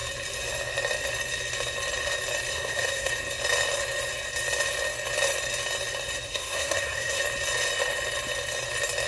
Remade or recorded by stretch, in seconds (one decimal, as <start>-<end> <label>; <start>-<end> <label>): 0.0-2.5 recorded; 2.5-3.1 remade; 3.1-6.3 recorded; 6.3-7.2 remade; 7.2-9.1 recorded